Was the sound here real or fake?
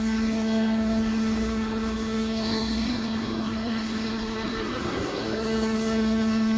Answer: fake